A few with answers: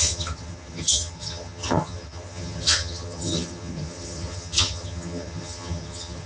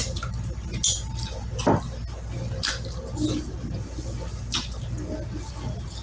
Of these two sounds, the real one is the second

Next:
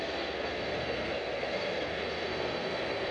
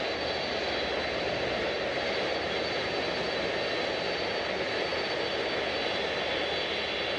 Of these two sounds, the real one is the second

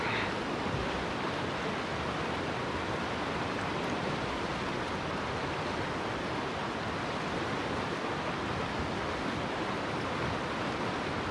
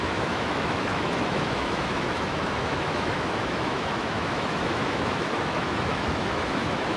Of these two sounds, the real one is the first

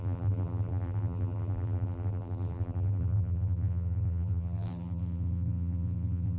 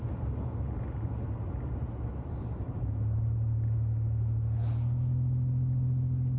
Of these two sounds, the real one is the second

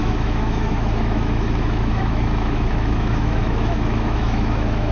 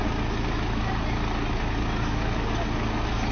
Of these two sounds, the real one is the second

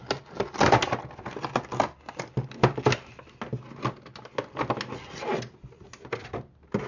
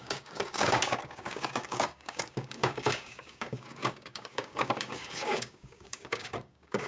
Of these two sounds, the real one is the first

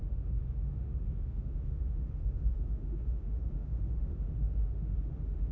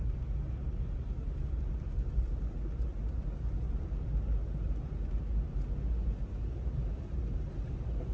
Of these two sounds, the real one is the second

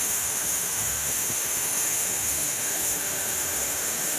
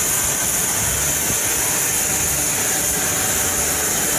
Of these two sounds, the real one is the second